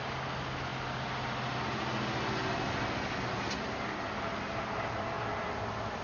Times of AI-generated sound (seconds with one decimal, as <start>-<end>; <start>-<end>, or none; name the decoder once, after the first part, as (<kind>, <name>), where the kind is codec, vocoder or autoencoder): none